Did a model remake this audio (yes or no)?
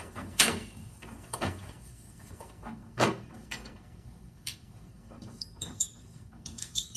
yes